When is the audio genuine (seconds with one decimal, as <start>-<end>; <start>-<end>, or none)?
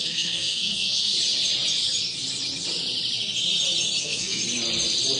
1.1-4.0; 4.4-5.2